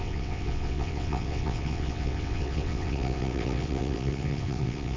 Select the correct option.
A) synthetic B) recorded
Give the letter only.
A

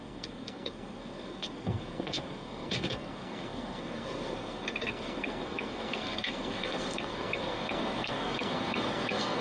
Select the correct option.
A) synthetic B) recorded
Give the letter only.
A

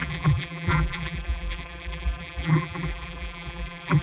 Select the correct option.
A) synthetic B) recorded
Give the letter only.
A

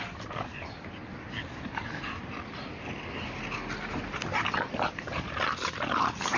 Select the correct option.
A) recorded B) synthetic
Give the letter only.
A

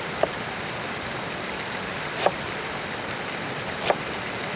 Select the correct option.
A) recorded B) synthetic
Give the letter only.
B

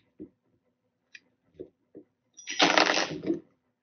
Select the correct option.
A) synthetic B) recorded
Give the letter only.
A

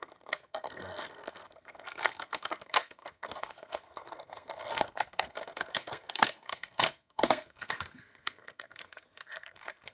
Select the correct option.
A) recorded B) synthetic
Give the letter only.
B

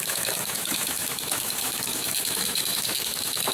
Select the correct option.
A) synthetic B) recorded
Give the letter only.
A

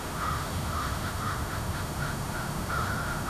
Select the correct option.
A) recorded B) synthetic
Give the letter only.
B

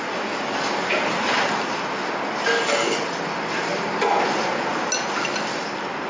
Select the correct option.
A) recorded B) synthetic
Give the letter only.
A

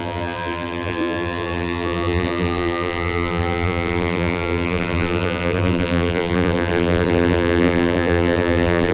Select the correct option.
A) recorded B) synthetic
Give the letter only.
B